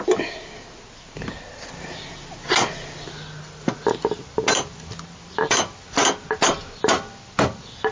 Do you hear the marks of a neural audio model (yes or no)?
no